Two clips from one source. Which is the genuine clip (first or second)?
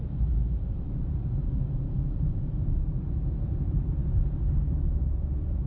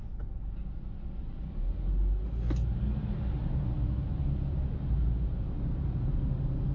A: second